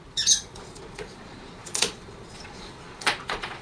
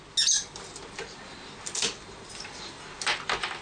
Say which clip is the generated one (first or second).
first